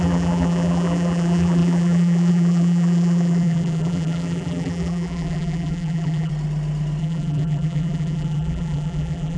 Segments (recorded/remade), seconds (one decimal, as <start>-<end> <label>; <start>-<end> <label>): 0.0-6.3 remade; 6.3-7.0 recorded; 7.0-9.4 remade